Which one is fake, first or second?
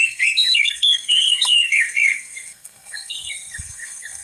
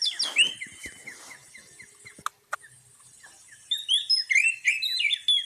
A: first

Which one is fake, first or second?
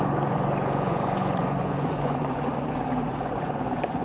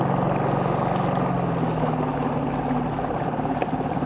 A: first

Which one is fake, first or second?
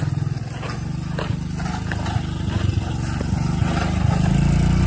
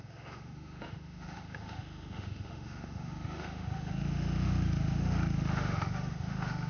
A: second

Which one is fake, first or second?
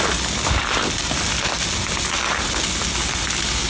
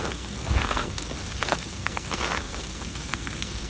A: second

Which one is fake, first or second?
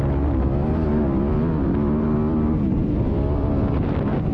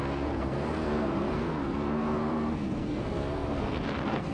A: second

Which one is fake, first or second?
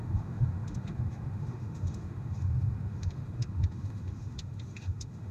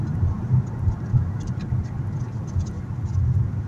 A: first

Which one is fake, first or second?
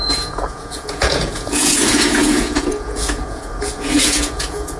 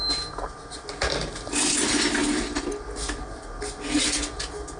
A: first